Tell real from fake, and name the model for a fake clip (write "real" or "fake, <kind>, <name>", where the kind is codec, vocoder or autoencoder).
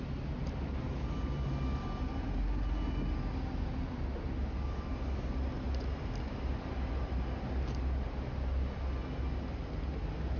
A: real